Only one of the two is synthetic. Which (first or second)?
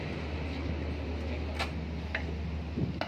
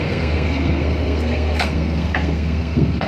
second